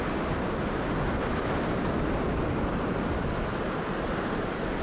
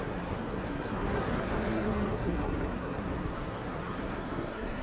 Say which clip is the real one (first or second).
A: first